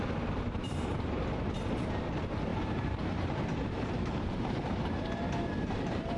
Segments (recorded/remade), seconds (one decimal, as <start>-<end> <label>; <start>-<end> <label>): 0.0-0.6 recorded; 0.6-1.2 remade; 1.2-2.5 recorded; 2.5-6.2 remade